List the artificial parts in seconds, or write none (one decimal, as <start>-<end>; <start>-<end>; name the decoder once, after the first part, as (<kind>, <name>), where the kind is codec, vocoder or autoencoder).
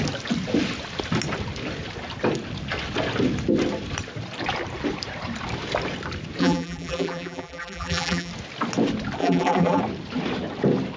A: 6.4-8.3 (vocoder, BigVGAN v2); 9.2-9.8